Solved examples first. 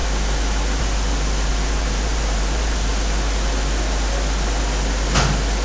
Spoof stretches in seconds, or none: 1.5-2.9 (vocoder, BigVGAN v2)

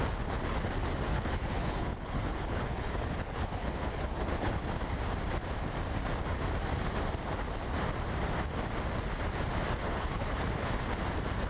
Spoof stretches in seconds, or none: 1.1-4.5 (codec, HILCodec); 9.8-10.7

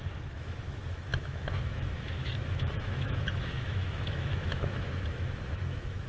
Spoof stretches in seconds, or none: 0.0-6.1 (autoencoder, DAC-VAE)

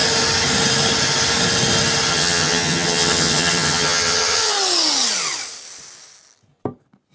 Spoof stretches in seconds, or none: 2.1-4.5 (vocoder, HiFi-GAN)

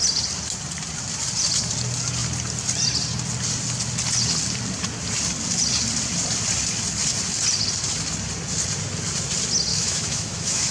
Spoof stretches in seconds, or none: 9.7-10.7 (autoencoder, DAC-VAE)

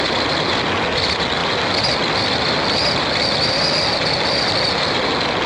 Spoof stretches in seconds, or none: none

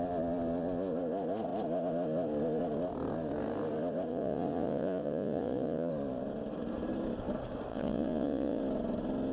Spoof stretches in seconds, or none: 4.1-5.9 (vocoder, Vocos); 7.7-8.6

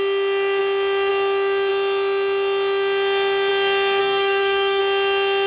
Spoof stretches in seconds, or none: 4.0-4.8 (codec, SNAC)